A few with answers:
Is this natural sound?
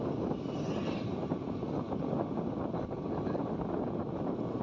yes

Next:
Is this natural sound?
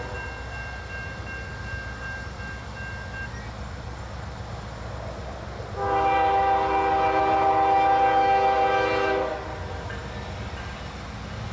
yes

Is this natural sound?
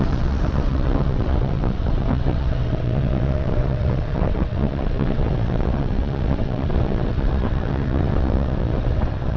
no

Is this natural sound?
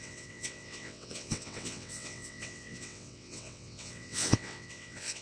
no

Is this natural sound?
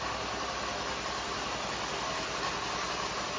yes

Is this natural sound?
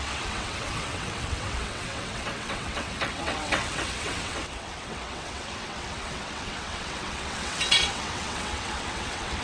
no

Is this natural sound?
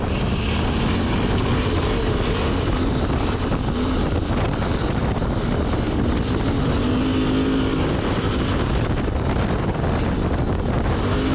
yes